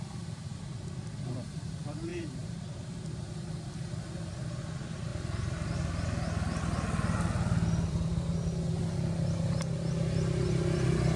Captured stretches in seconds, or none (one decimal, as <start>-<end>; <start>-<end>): 0.0-2.1; 3.5-11.2